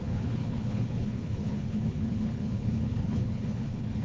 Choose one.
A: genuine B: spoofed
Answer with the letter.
B